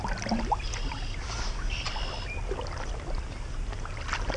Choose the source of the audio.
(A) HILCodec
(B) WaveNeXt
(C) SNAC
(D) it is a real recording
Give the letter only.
D